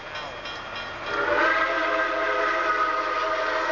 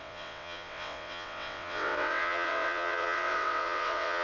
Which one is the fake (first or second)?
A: second